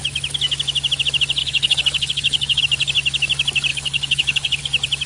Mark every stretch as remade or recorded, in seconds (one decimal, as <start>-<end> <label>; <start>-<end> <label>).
0.0-1.4 recorded; 1.4-2.6 remade; 2.6-3.7 recorded; 3.7-4.6 remade; 4.6-5.1 recorded